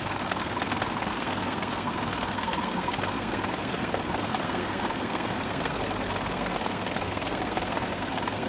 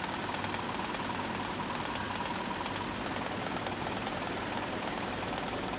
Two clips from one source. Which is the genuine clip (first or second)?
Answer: second